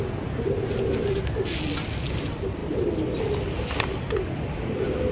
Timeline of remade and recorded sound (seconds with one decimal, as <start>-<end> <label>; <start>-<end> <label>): 0.0-5.1 recorded